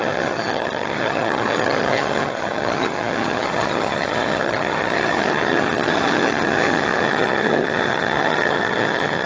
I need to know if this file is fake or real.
fake